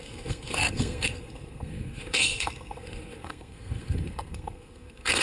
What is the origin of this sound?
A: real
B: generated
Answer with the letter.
B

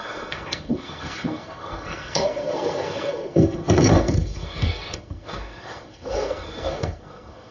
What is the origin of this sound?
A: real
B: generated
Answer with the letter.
B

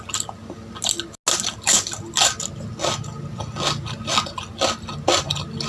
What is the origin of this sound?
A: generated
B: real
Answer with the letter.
B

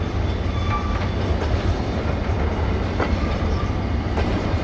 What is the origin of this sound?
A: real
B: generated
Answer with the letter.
A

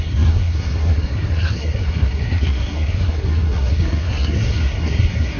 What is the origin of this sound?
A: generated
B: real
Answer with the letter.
A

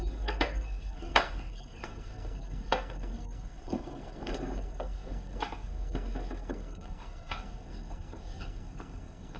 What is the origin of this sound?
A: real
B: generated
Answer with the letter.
B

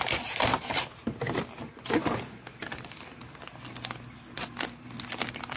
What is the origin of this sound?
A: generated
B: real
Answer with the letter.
B